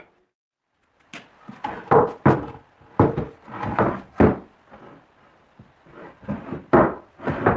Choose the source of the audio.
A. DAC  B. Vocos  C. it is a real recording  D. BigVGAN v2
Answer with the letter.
C